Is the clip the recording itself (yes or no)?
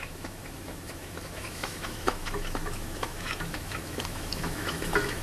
no